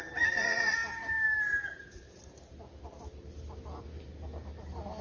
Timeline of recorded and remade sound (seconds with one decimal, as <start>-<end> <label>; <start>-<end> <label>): 0.0-5.0 recorded